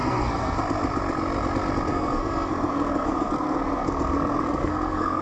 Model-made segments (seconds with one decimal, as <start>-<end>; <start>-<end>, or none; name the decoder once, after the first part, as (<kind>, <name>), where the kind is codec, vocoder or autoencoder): 0.0-0.6 (codec, SNAC); 1.9-5.2